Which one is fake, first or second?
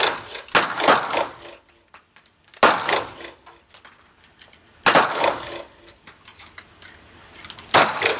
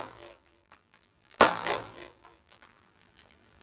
second